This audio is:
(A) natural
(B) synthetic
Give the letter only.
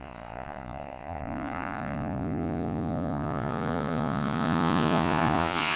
B